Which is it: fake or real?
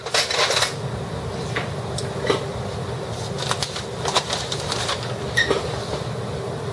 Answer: real